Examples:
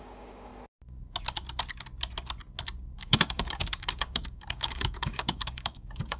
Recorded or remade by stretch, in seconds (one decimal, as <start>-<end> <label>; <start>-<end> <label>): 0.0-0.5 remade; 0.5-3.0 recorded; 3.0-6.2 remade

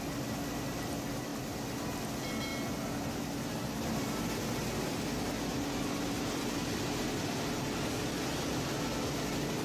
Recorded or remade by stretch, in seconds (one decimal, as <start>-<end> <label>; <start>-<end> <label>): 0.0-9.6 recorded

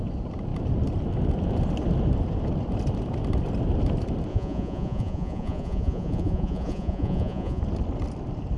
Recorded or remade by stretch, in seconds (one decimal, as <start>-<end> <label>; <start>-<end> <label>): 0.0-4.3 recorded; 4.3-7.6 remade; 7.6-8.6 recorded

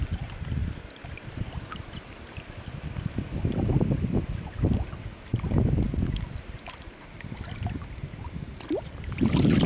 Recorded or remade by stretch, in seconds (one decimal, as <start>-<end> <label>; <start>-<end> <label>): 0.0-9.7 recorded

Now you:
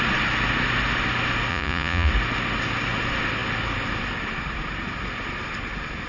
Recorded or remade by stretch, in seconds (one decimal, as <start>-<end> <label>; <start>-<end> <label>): 0.0-1.5 recorded; 1.5-2.1 remade; 2.1-6.1 recorded

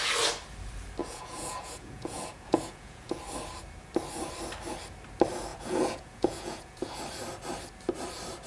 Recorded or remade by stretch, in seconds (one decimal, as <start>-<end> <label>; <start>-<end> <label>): 0.0-1.0 recorded; 1.0-3.2 remade; 3.2-5.5 recorded; 5.5-7.0 remade; 7.0-8.5 recorded